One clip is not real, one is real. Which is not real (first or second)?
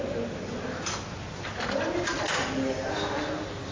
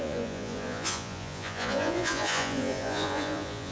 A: second